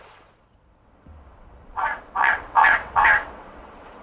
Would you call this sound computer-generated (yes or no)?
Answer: yes